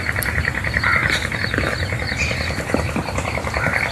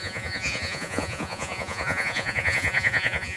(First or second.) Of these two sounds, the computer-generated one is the second